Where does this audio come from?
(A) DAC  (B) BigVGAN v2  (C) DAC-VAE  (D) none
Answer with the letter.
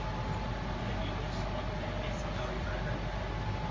D